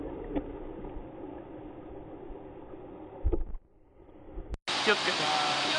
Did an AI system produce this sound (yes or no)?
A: no